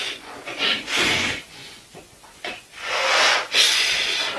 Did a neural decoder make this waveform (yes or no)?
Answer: yes